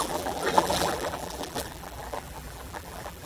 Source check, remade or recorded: remade